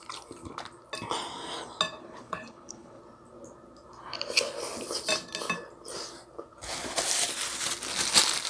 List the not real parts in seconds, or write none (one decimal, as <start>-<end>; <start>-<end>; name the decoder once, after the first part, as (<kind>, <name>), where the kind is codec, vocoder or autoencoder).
2.0-3.0 (codec, HILCodec)